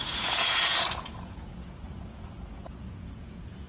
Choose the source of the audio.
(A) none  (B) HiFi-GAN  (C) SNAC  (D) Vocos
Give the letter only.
D